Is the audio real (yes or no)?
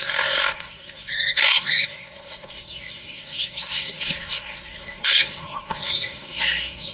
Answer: no